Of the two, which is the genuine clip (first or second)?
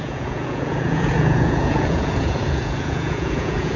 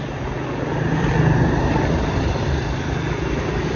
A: second